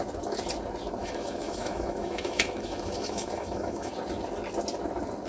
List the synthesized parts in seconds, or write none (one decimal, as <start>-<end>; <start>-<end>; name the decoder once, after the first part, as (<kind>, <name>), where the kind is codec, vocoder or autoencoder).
1.0-3.9 (autoencoder, DAC-VAE)